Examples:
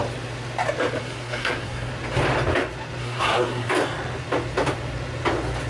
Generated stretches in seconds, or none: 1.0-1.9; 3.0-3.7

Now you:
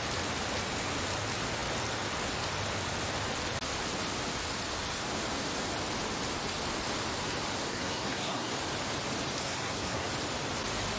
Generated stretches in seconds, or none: 7.7-8.5; 9.4-10.1

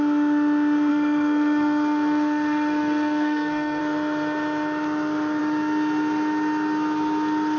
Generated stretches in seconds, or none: 0.9-3.8

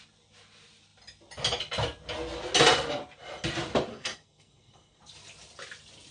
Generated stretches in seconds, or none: 3.9-5.0

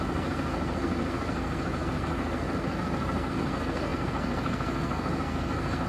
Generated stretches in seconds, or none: 0.0-5.9

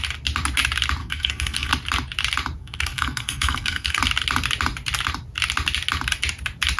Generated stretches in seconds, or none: 1.0-1.7; 2.6-4.0

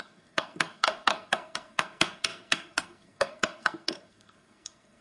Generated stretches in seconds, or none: 0.0-5.0